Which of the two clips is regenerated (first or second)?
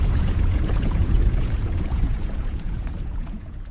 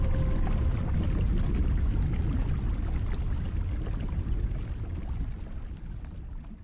first